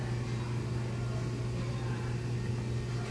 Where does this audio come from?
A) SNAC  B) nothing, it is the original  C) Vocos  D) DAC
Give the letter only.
B